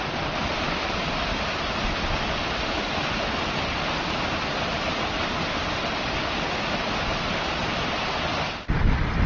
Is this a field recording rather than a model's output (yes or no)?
yes